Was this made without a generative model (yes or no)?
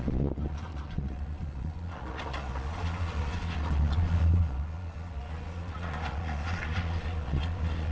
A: no